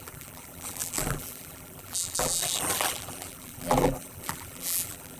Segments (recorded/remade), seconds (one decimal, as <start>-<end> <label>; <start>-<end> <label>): 0.0-5.2 remade

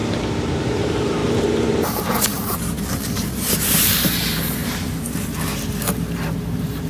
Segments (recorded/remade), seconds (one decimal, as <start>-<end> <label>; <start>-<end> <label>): 0.0-0.6 recorded; 0.6-6.9 remade

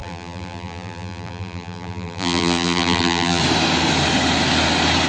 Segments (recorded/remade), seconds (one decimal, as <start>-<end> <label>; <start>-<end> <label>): 0.0-3.4 remade; 3.4-5.1 recorded

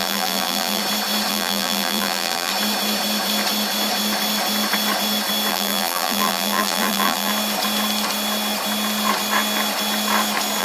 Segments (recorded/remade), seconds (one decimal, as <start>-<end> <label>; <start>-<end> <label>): 0.0-0.8 remade; 0.8-1.3 recorded; 1.3-2.5 remade; 2.5-5.5 recorded; 5.5-7.3 remade; 7.3-10.6 recorded

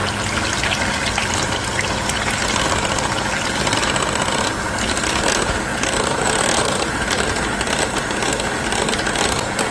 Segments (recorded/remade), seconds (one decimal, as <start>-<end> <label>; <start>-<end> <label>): 0.0-5.7 recorded; 5.7-7.4 remade; 7.4-9.7 recorded

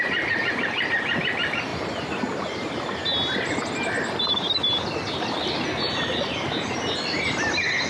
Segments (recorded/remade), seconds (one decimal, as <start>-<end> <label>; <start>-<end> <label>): 0.0-1.7 recorded; 1.7-3.5 remade; 3.5-7.9 recorded